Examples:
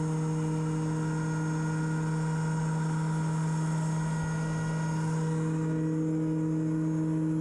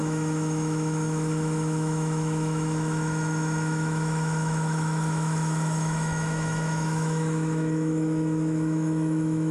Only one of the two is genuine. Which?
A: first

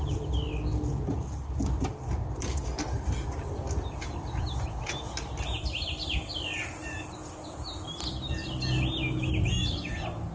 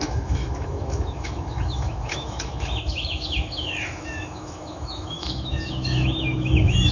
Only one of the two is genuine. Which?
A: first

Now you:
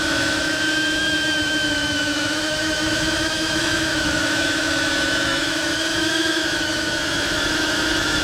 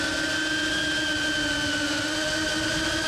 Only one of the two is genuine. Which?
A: second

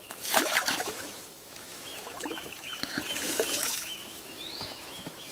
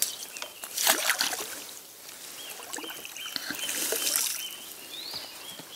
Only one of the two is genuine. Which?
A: second